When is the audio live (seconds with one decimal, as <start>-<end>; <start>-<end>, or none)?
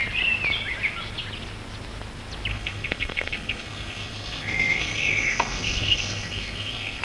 0.0-2.5